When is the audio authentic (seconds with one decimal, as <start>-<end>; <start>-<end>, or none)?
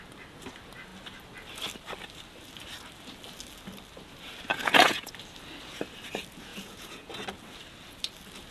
0.0-4.5; 5.1-6.5; 7.1-8.5